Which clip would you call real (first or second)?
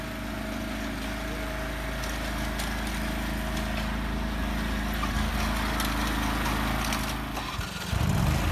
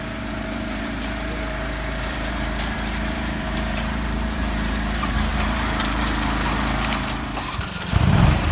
first